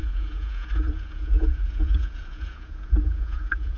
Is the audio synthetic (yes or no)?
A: yes